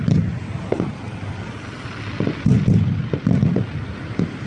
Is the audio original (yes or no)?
yes